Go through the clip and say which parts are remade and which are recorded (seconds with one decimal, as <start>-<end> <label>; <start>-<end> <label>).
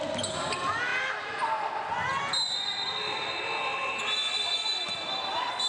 0.0-5.7 recorded